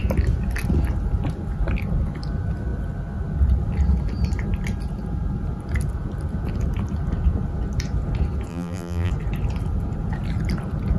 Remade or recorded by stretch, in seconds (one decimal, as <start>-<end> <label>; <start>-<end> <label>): 0.0-8.5 recorded; 8.5-9.1 remade; 9.1-11.0 recorded